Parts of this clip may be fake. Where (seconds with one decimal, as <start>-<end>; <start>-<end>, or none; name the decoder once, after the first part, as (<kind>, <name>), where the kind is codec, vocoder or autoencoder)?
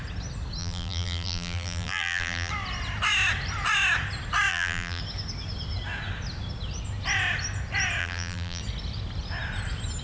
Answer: 0.6-2.5 (vocoder, BigVGAN v2); 4.5-5.0; 8.0-8.6